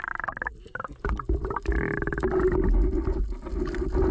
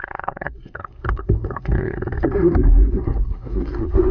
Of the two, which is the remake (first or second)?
second